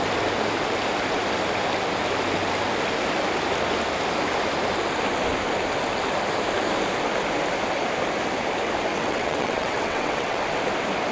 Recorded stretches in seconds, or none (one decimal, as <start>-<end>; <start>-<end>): 0.0-8.9; 10.4-11.1